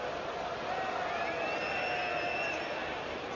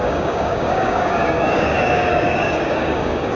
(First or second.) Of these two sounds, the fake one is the second